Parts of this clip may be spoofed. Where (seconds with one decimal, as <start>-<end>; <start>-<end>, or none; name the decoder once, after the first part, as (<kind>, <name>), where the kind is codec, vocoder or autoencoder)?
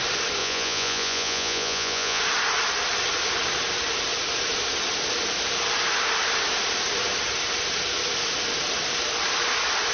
0.4-2.2 (vocoder, Vocos)